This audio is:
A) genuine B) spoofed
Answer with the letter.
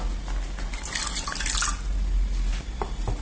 A